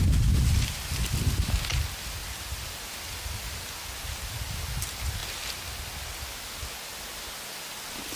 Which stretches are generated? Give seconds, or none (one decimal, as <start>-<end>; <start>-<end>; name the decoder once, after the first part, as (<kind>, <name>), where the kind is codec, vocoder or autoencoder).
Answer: none